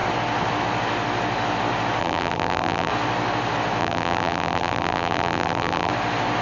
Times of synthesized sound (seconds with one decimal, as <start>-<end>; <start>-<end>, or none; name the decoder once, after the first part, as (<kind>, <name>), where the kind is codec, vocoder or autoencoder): 2.0-2.9 (vocoder, BigVGAN v2); 3.8-5.9